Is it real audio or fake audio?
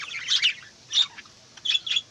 real